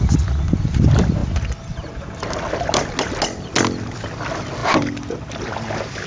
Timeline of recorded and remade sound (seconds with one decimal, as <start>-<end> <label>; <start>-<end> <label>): 0.0-6.1 recorded